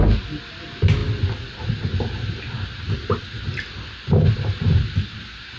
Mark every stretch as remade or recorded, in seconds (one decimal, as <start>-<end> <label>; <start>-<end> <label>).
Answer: 0.0-5.6 recorded